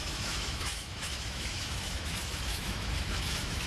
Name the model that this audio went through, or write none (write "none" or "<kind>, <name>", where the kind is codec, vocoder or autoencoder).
autoencoder, DAC-VAE